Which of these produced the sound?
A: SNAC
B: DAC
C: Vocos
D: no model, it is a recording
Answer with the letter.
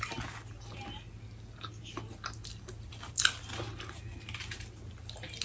D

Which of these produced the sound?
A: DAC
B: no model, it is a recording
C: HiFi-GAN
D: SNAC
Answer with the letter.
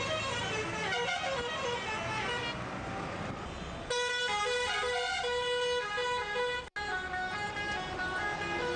B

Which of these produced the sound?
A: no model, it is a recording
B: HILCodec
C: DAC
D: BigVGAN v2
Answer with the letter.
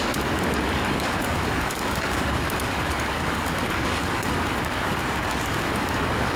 C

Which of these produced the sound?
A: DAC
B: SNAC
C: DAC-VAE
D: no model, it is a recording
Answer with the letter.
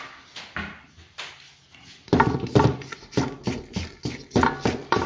D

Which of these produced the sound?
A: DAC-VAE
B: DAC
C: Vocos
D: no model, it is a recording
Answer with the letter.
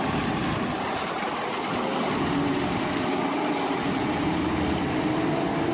D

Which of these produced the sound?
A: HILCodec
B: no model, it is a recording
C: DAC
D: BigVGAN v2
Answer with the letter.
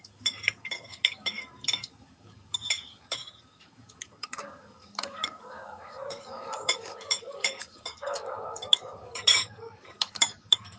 C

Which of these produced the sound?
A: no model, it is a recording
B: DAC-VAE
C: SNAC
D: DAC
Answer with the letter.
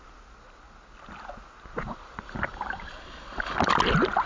A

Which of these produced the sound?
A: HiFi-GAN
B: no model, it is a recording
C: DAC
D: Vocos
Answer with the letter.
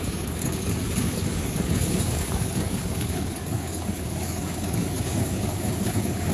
C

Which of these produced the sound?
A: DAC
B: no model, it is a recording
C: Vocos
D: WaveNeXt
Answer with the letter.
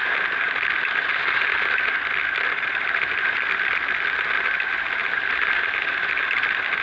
B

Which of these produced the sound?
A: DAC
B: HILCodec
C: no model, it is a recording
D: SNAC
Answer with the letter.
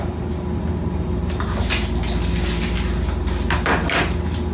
C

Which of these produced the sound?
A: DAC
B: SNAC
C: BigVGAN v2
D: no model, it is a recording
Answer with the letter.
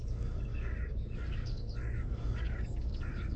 A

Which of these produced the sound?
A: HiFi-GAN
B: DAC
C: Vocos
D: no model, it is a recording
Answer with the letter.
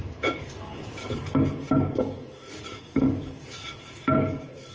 B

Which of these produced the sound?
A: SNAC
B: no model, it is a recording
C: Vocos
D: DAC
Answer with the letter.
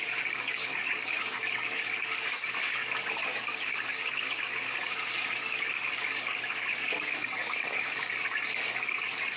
D